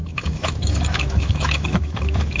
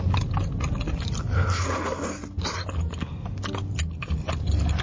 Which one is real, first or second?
second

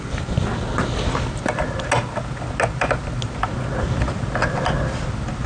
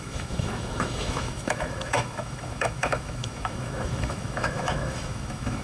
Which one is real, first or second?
first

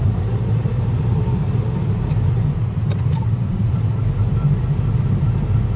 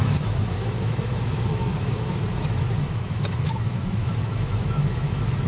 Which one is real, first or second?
first